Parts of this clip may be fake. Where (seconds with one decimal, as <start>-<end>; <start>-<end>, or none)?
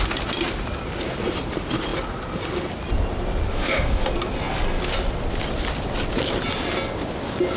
3.5-4.1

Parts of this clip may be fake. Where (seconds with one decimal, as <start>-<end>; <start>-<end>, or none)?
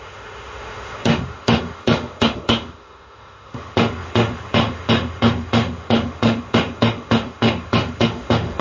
0.0-8.6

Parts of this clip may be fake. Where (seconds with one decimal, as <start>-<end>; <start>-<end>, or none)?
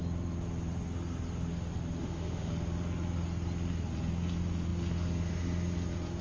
2.0-2.5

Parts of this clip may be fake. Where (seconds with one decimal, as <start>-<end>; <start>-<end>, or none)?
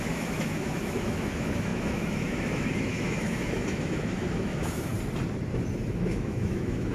0.0-4.9; 5.9-6.9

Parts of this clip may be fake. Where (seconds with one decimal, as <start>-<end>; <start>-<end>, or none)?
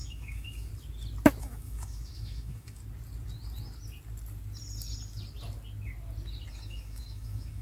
0.0-0.7; 1.4-2.8; 6.5-7.6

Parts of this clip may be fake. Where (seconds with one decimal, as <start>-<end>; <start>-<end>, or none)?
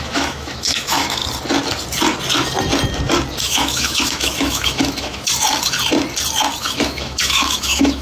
0.0-1.2; 3.4-5.3; 6.6-8.0